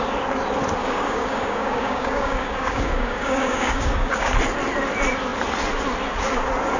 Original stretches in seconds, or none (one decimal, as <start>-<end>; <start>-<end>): 0.0-0.8; 4.3-6.8